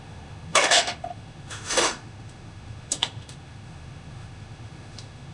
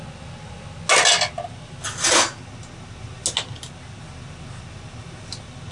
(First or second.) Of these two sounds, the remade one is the first